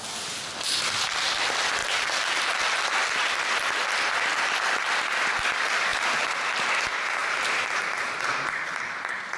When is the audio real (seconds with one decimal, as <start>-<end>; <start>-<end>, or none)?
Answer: 0.0-1.8; 2.5-5.9; 6.5-7.2; 8.6-9.4